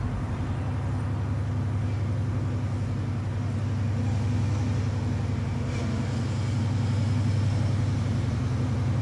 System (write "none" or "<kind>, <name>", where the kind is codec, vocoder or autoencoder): none